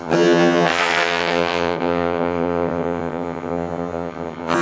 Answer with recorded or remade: remade